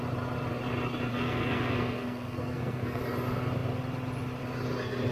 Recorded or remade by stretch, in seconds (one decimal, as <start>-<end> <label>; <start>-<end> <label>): 0.0-1.1 recorded; 1.1-3.0 remade; 3.0-5.1 recorded